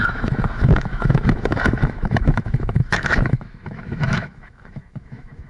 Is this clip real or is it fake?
fake